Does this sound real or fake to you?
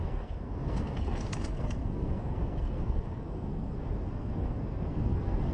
fake